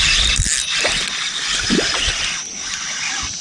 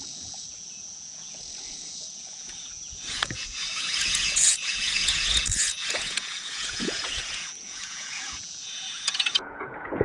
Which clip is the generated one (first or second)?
second